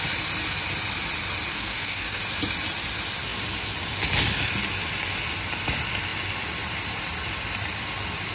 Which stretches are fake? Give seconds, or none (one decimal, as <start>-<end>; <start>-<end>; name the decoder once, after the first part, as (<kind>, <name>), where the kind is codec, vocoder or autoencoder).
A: 1.5-2.2 (codec, DAC)